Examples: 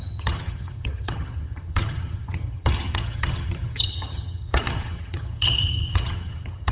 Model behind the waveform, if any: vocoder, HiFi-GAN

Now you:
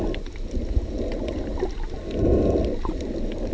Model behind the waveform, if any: none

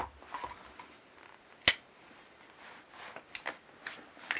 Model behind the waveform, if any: none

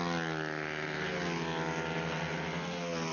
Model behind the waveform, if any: none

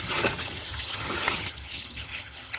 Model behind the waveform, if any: vocoder, HiFi-GAN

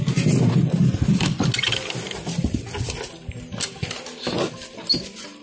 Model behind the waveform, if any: none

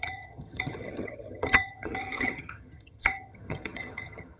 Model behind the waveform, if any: vocoder, HiFi-GAN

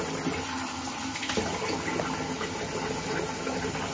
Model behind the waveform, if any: none